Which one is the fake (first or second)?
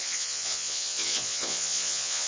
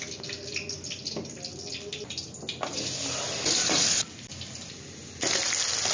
first